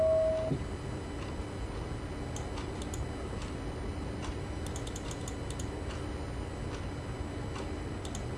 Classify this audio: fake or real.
real